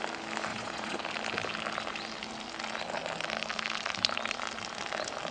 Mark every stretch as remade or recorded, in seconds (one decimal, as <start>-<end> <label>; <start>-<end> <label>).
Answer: 0.0-0.5 recorded; 0.5-1.0 remade; 1.0-5.3 recorded